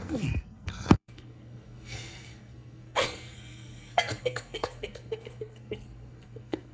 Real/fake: fake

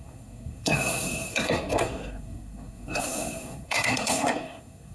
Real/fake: fake